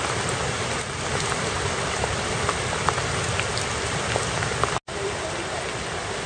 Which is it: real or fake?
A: real